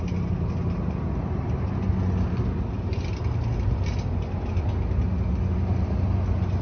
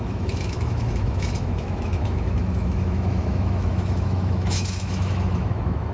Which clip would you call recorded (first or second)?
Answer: first